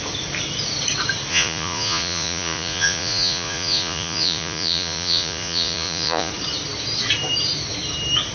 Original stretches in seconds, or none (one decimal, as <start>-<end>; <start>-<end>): 0.0-1.3; 6.3-8.3